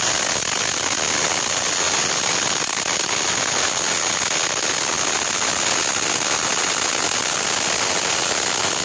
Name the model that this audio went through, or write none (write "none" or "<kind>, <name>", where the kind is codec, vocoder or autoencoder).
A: none